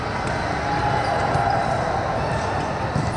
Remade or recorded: recorded